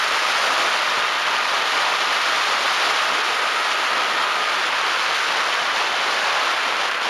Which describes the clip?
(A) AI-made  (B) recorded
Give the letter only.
B